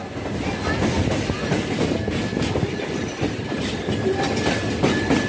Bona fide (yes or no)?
yes